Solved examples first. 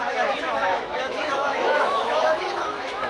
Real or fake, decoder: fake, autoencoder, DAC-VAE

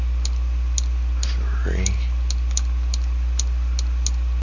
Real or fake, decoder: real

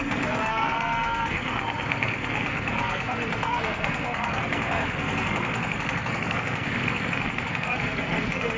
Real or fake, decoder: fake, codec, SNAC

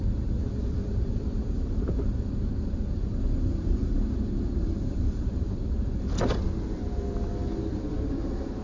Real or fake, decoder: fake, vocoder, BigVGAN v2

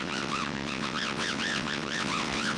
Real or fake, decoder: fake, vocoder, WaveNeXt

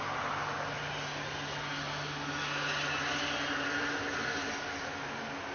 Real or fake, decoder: real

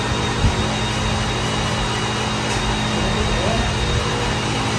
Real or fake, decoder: real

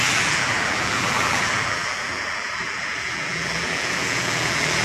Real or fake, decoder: fake, vocoder, BigVGAN v2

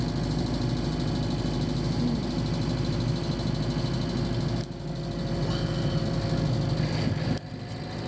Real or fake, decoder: real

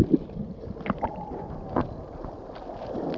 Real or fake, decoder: real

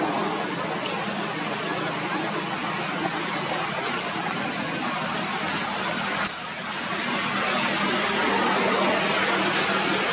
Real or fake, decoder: real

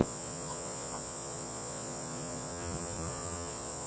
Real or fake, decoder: fake, vocoder, Vocos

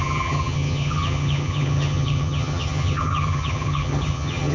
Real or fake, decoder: fake, vocoder, HiFi-GAN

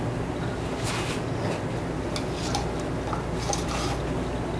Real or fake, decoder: real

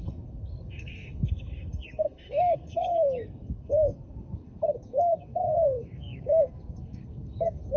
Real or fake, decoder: fake, codec, SNAC